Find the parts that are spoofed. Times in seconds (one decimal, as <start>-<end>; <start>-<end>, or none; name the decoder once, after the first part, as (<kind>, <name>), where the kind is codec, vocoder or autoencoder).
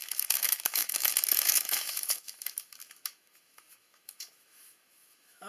0.0-5.5 (autoencoder, DAC-VAE)